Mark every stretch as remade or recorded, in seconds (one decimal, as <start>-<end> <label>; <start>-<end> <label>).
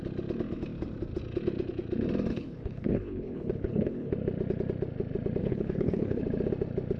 0.0-2.3 recorded; 2.3-4.1 remade; 4.1-5.4 recorded; 5.4-6.2 remade; 6.2-7.0 recorded